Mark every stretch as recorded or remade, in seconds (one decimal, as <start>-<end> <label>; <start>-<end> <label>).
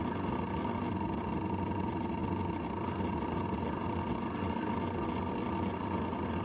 0.0-6.4 recorded